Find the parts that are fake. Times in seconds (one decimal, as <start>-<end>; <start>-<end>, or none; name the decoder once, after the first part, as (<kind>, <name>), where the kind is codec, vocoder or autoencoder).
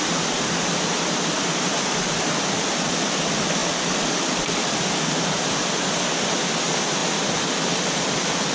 none